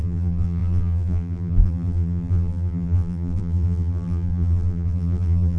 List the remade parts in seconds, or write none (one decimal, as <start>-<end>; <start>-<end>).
0.0-5.6